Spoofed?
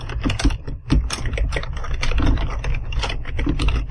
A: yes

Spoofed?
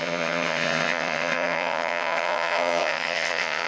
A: yes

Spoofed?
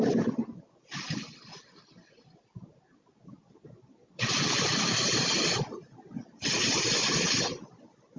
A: no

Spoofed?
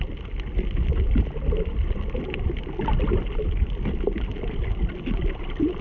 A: no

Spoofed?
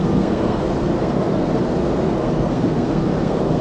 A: yes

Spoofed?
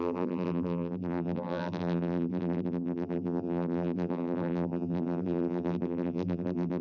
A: yes